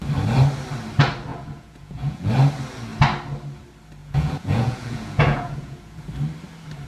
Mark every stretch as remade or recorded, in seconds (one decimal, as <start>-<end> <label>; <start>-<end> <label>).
0.0-1.3 recorded; 1.3-2.3 remade; 2.3-4.0 recorded; 4.0-6.0 remade; 6.0-6.9 recorded